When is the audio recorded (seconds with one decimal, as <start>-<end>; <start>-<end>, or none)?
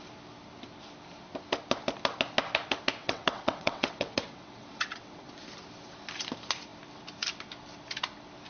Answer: 0.0-3.0; 5.3-8.5